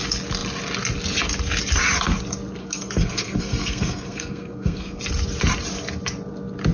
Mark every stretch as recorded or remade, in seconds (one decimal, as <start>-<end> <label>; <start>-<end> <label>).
0.0-2.6 recorded; 2.6-5.0 remade; 5.0-6.7 recorded